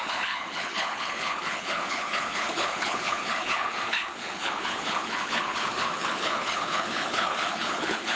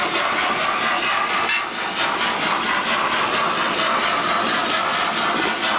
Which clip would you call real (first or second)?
second